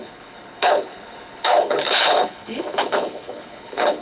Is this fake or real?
fake